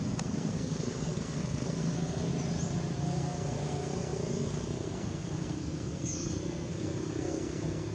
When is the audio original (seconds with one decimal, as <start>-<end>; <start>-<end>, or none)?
2.3-3.0